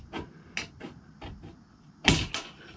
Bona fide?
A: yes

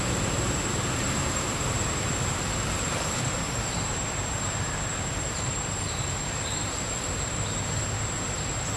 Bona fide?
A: no